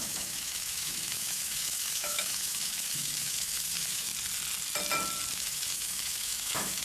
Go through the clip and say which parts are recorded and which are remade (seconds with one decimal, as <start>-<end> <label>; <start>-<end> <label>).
0.0-4.1 remade; 4.1-5.3 recorded; 5.3-6.8 remade